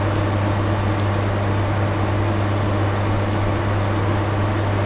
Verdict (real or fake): real